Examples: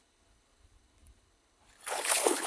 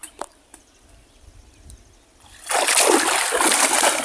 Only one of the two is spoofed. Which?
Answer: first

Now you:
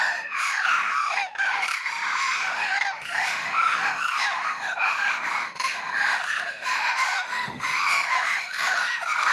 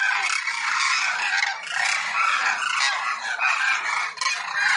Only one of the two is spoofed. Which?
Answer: first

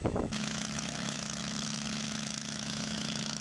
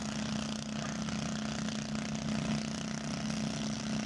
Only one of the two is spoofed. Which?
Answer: first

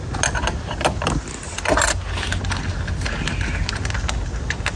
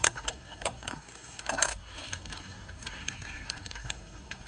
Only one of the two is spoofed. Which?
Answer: second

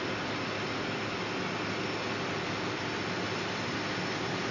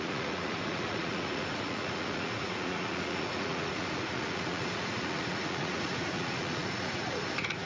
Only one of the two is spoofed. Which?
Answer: second